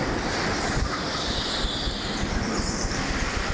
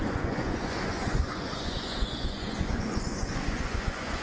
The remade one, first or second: second